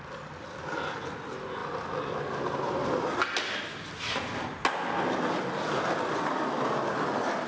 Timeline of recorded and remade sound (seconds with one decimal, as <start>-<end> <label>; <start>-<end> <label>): 0.0-7.5 recorded